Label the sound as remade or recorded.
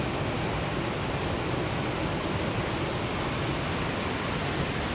recorded